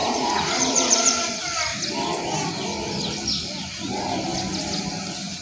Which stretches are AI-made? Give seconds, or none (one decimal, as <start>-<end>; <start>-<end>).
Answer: 0.0-1.1